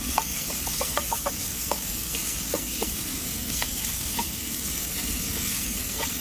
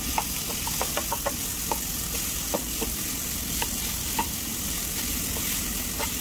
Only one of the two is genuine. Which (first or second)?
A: second